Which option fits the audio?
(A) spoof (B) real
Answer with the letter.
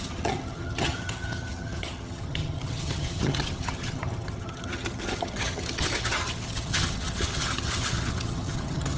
A